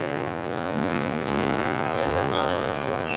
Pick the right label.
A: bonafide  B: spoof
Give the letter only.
B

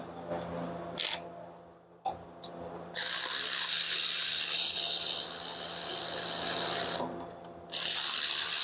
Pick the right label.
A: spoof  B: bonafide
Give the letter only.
B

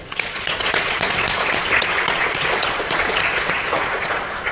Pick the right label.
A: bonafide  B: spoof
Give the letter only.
B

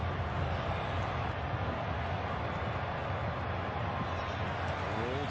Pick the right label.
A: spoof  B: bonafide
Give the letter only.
B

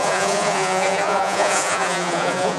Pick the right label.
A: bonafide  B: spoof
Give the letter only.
B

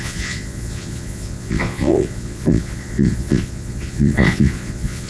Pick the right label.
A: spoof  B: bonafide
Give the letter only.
A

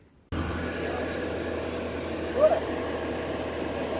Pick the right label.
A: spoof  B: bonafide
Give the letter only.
B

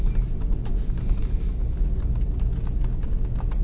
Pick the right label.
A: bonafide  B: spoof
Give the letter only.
A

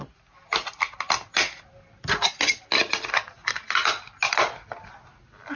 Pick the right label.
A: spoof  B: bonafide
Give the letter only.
B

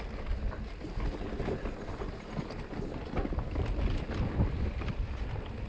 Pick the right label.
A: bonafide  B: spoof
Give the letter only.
A